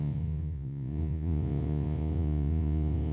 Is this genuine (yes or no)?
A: no